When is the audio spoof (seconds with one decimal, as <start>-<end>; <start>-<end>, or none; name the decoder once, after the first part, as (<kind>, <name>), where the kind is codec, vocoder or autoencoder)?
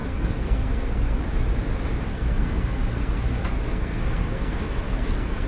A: 0.0-1.2 (codec, SNAC); 2.1-5.5